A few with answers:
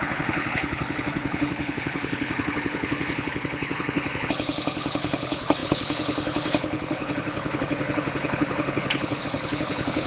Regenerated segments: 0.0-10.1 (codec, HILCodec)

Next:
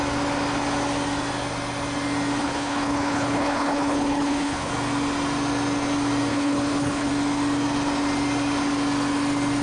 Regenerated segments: 2.4-4.7 (codec, HILCodec); 6.3-7.1

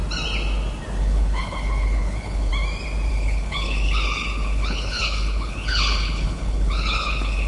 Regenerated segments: 1.0-2.5 (codec, HILCodec); 3.1-7.5